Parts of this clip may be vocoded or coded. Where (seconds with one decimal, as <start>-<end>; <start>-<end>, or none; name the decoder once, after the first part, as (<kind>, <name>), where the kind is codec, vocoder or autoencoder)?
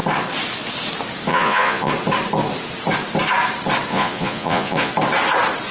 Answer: 1.3-1.9 (vocoder, Vocos); 3.9-4.9